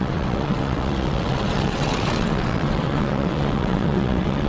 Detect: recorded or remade remade